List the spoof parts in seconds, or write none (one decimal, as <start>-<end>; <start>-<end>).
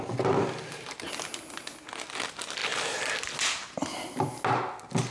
none